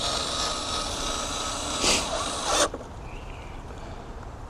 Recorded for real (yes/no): yes